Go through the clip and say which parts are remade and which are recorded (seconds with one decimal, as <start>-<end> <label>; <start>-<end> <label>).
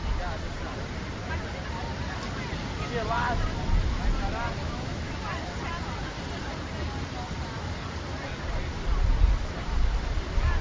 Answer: 0.0-4.6 recorded; 4.6-5.1 remade; 5.1-10.6 recorded